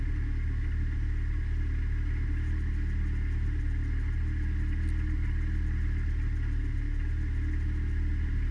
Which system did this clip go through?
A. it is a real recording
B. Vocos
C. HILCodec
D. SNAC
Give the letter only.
A